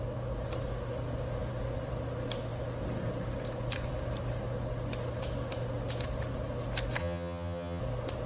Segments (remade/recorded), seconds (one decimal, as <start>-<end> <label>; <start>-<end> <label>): 0.0-7.0 recorded; 7.0-7.8 remade; 7.8-8.3 recorded